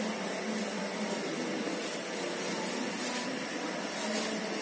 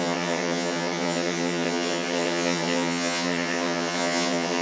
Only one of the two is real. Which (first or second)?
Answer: first